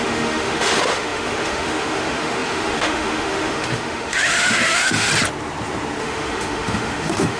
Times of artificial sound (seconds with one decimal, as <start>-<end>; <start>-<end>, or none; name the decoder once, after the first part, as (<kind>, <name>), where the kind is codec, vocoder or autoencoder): 0.0-5.1 (autoencoder, DAC-VAE); 6.0-7.4